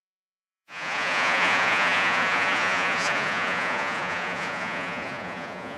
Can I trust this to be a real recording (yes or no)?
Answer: no